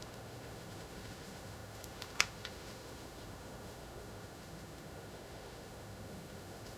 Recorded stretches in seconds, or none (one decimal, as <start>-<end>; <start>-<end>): none